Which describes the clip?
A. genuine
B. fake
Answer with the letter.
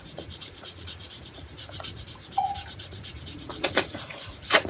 B